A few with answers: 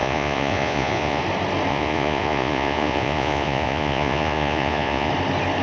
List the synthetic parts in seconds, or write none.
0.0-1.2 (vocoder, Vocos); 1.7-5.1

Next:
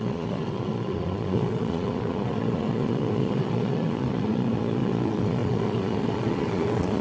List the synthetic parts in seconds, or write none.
0.0-7.0 (vocoder, Vocos)

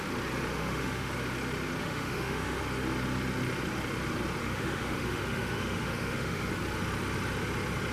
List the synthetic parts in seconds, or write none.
0.5-1.1 (autoencoder, DAC-VAE); 1.8-2.6; 4.4-6.5

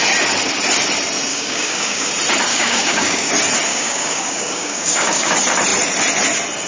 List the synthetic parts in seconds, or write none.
1.3-2.1 (codec, DAC); 2.5-3.3; 3.7-5.3

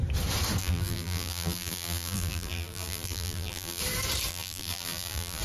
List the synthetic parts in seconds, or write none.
0.6-3.8 (vocoder, BigVGAN v2); 4.3-5.4